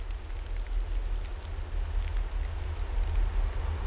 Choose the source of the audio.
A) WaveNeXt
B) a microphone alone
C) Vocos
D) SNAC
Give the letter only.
B